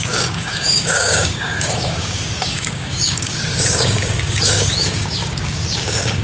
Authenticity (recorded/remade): remade